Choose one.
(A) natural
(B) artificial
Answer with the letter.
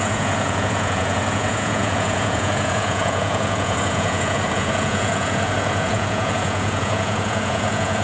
B